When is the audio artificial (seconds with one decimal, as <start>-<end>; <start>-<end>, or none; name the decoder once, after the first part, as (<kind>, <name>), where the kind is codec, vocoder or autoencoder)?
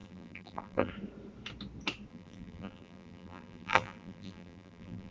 0.0-0.9 (vocoder, BigVGAN v2); 2.1-5.1